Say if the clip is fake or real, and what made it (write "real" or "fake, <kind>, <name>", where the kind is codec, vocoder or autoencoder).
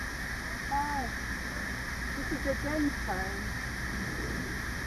real